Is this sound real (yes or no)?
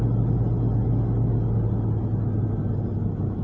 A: yes